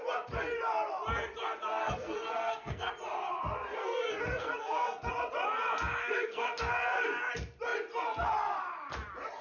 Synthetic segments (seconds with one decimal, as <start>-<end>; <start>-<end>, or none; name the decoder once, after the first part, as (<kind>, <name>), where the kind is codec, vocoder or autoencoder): 1.8-2.9 (codec, SNAC); 3.8-5.1; 6.0-6.7

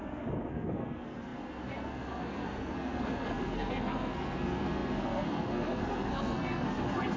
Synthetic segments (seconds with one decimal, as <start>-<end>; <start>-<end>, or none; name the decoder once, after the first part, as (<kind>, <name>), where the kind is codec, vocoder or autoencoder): 0.0-7.2 (codec, SNAC)

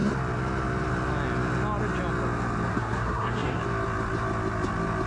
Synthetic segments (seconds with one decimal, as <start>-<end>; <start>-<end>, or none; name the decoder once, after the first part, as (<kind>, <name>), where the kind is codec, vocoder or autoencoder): 2.7-3.6 (codec, SNAC)